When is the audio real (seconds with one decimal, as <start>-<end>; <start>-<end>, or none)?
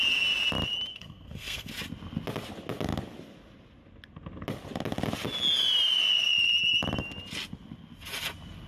0.0-0.9; 1.7-8.7